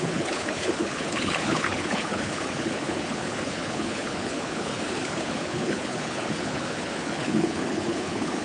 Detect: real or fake fake